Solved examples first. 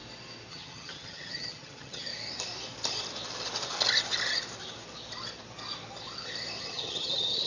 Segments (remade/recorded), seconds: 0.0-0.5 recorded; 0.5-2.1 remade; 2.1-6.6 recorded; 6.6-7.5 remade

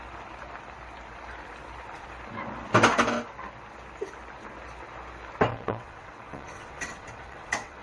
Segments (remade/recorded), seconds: 0.0-5.5 recorded; 5.5-7.8 remade

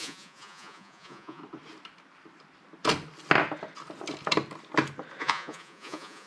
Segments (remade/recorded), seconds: 0.0-1.4 remade; 1.4-5.2 recorded; 5.2-6.3 remade